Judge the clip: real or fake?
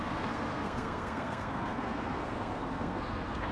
fake